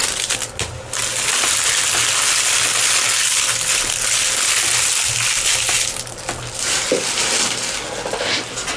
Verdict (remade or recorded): recorded